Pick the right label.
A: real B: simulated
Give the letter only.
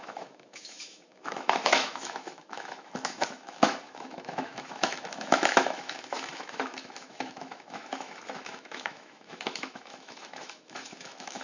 B